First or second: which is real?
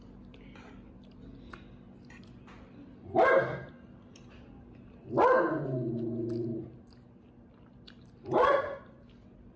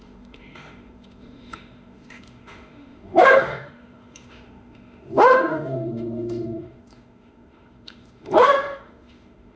first